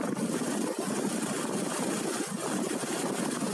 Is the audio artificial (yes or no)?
no